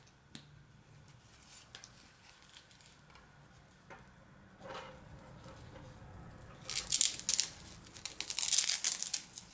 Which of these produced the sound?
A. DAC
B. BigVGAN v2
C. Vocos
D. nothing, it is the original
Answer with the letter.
D